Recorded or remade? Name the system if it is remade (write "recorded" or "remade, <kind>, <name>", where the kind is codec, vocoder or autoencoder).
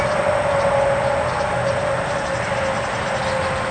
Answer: recorded